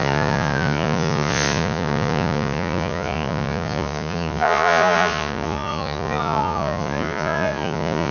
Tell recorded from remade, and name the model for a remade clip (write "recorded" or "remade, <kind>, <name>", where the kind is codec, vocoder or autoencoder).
remade, vocoder, Vocos